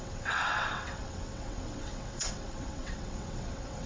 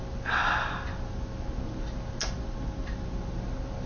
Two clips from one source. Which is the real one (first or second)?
second